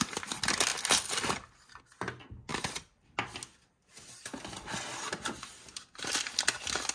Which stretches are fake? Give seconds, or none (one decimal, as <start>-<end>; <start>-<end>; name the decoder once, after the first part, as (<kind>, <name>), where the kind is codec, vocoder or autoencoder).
none

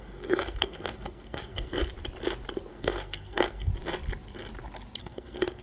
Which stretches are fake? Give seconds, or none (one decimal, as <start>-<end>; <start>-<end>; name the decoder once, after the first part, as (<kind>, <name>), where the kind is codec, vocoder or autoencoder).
0.0-1.8 (codec, SNAC); 2.7-3.7; 5.0-5.6

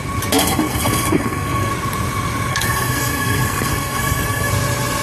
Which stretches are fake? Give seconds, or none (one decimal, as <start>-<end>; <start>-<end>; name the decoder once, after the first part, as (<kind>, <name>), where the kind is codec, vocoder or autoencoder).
0.4-1.7 (codec, SNAC); 2.5-4.5

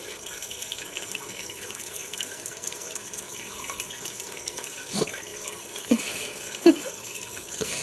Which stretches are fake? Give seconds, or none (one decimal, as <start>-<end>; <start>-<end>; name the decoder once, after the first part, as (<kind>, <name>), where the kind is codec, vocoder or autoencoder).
0.0-7.8 (codec, SNAC)

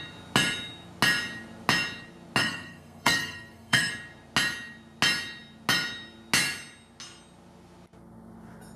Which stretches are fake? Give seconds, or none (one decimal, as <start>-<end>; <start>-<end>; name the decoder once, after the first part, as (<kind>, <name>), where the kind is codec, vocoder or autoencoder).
2.4-3.9 (codec, SNAC)

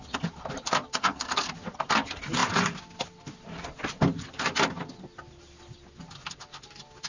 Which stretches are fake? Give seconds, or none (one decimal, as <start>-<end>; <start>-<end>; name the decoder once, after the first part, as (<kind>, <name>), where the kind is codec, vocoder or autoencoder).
1.0-1.5 (codec, SNAC)